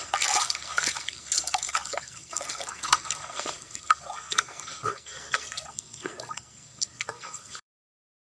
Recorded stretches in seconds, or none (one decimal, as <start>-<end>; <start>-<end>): none